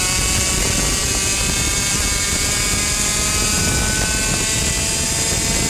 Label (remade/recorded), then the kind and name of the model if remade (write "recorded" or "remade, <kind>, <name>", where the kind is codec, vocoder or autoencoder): recorded